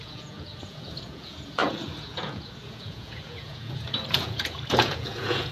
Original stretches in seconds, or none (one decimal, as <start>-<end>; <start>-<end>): none